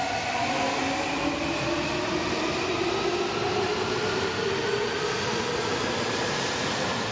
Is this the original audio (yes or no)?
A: yes